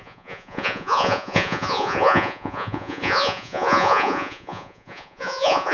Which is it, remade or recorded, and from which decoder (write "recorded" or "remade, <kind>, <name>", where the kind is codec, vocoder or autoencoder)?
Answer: remade, vocoder, Vocos